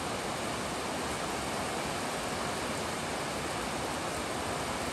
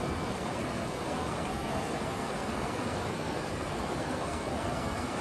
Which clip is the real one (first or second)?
first